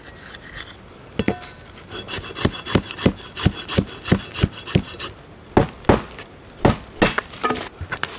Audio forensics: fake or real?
real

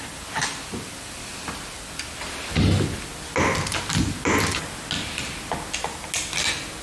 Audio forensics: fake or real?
real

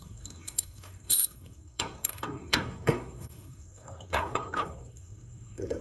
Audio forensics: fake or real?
fake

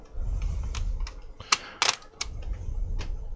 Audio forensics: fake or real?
real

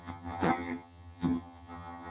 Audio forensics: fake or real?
fake